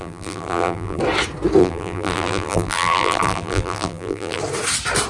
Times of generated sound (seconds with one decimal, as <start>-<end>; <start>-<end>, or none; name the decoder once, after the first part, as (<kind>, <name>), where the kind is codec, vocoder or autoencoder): 0.0-1.0 (vocoder, BigVGAN v2); 1.6-4.4